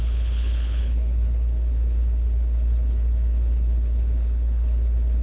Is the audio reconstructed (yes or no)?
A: yes